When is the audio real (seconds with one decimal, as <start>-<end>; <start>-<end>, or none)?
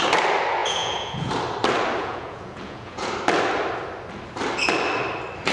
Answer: 0.0-0.6; 1.3-2.0; 3.1-5.5